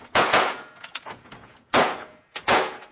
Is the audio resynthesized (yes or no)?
yes